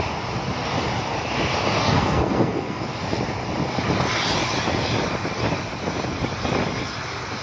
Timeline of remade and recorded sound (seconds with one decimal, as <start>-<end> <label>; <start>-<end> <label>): 0.0-1.8 recorded; 1.8-2.8 remade; 2.8-7.4 recorded